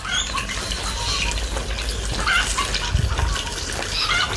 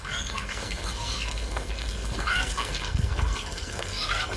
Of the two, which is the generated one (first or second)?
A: second